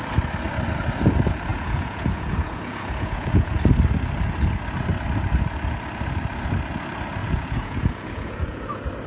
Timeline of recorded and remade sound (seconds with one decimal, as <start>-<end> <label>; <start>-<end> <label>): 0.0-1.5 recorded; 1.5-3.6 remade; 3.6-7.2 recorded; 7.2-8.7 remade; 8.7-9.1 recorded